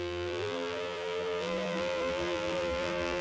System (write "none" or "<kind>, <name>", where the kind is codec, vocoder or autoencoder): vocoder, BigVGAN v2